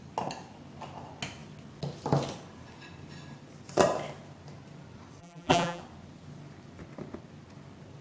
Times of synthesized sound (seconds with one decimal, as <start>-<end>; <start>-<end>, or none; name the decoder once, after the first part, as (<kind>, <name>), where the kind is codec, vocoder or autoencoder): 5.2-5.8 (vocoder, BigVGAN v2)